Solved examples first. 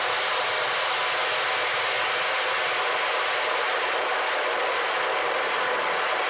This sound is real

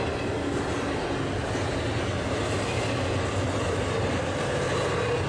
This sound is real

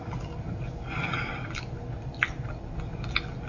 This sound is real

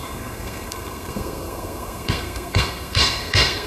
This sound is fake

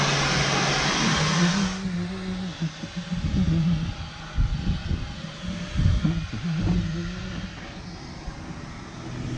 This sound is real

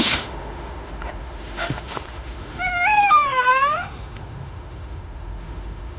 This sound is fake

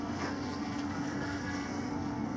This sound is fake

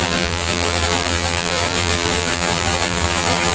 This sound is fake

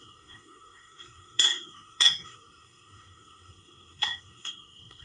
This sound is fake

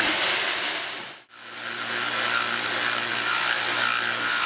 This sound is real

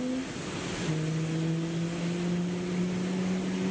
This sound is real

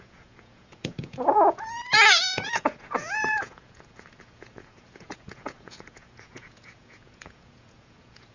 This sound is fake